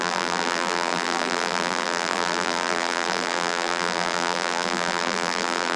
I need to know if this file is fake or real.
fake